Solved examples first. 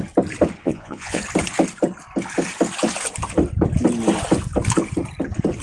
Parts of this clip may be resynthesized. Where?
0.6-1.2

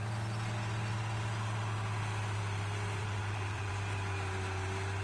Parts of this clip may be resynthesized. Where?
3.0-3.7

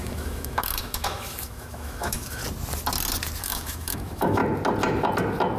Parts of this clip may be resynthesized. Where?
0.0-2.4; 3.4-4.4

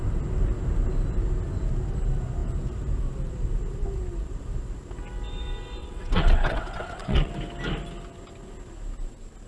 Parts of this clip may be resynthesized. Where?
5.8-7.3

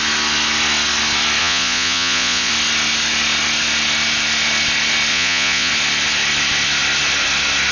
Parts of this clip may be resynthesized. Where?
1.4-2.5; 5.1-5.7